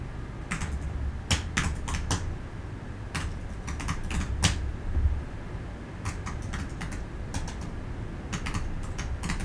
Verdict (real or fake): real